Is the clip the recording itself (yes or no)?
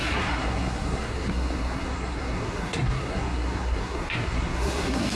no